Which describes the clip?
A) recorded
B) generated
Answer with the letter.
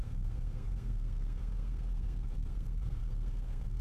B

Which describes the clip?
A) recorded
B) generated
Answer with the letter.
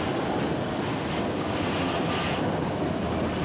A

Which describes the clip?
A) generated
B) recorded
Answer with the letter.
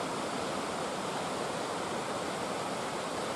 B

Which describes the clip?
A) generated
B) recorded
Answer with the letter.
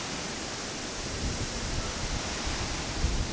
B